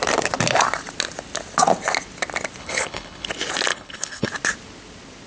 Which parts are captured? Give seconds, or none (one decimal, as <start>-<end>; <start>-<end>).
0.0-2.6; 3.3-3.7; 4.3-5.3